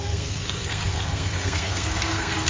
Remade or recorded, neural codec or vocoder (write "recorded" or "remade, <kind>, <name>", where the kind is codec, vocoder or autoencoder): remade, codec, SNAC